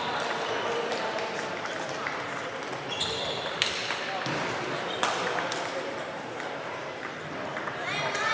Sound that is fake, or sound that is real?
real